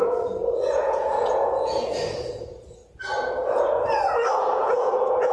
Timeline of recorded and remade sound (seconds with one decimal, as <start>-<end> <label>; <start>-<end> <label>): 0.0-2.8 remade; 2.8-4.4 recorded; 4.4-5.3 remade